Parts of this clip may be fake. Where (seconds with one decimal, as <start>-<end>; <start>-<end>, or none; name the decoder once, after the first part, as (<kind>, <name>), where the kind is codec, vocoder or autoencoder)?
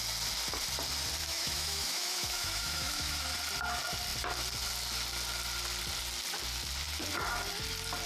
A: 1.2-3.2 (autoencoder, DAC-VAE)